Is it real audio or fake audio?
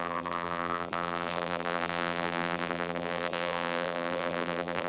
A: fake